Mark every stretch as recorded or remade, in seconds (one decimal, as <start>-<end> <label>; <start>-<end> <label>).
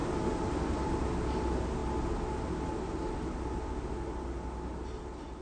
0.0-5.4 recorded